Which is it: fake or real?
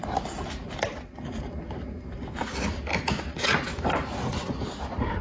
real